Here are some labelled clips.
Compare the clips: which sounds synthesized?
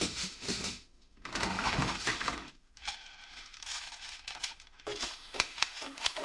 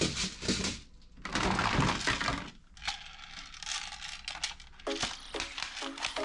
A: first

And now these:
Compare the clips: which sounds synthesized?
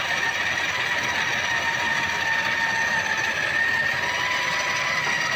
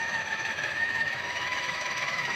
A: second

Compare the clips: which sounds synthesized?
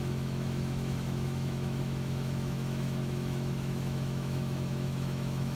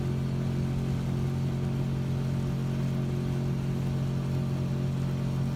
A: first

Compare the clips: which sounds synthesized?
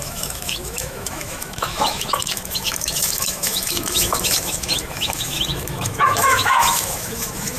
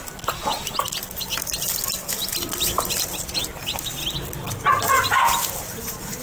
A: first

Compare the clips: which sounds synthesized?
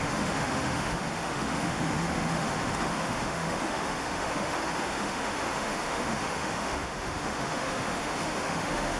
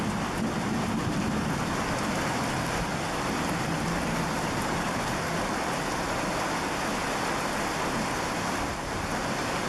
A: first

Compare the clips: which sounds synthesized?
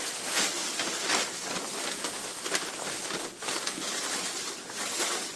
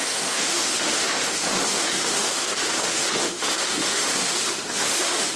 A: second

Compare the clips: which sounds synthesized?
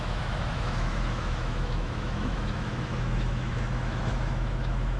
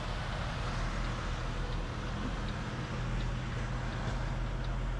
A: first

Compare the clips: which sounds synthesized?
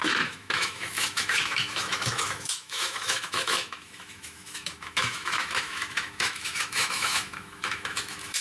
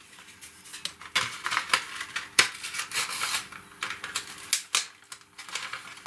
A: first